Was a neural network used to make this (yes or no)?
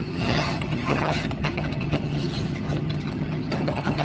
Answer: yes